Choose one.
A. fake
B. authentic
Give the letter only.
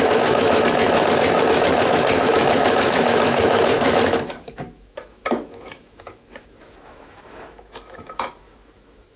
A